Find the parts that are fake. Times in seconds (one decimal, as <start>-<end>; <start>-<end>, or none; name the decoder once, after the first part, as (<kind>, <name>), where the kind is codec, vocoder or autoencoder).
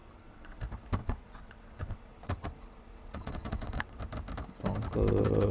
0.0-0.6 (vocoder, WaveNeXt); 1.0-4.0